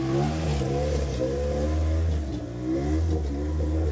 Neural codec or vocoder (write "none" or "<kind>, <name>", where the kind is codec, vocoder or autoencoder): none